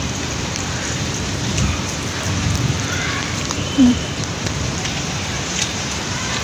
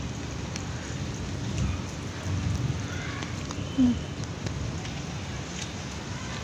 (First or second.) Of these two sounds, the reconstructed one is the first